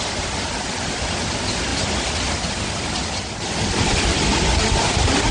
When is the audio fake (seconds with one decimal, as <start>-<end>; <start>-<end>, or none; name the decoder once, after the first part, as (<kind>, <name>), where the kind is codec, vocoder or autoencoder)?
none